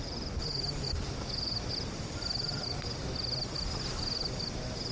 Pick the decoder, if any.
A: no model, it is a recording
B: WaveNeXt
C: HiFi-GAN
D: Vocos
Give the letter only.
A